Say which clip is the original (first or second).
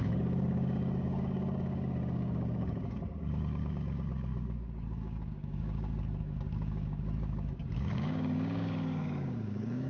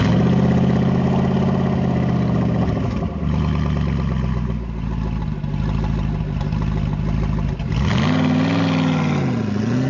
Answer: second